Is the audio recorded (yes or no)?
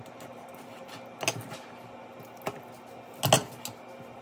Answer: yes